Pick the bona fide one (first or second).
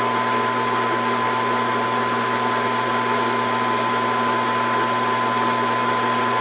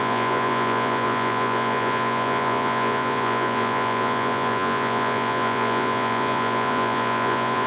first